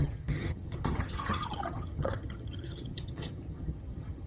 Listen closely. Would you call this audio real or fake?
fake